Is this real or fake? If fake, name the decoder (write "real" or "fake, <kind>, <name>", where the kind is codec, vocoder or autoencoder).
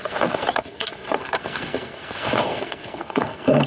fake, codec, SNAC